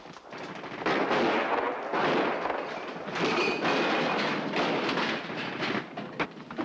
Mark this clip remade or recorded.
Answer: recorded